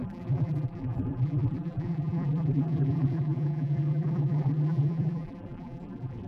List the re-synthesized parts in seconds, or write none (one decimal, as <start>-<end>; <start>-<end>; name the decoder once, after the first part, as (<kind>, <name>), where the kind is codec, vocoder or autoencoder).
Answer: 0.0-6.3 (vocoder, BigVGAN v2)